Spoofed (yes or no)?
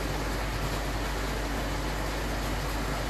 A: no